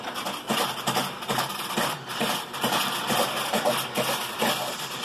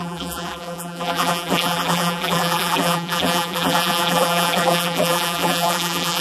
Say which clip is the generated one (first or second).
second